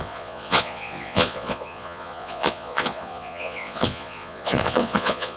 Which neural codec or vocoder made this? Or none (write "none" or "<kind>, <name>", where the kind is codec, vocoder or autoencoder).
vocoder, Vocos